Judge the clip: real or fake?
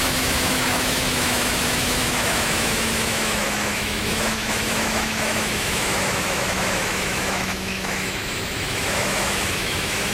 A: fake